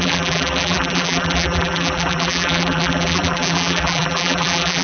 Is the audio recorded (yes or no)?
no